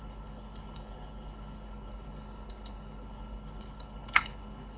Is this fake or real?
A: fake